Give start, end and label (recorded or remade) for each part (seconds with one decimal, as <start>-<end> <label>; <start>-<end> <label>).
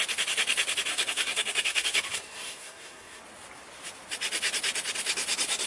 0.0-0.9 recorded; 0.9-3.2 remade; 3.2-5.7 recorded